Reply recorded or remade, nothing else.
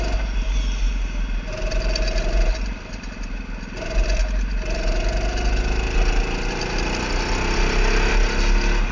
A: recorded